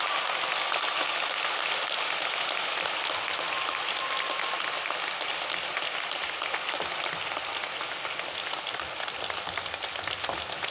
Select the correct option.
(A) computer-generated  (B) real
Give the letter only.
B